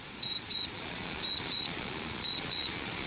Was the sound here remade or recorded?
remade